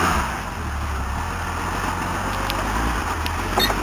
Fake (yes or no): no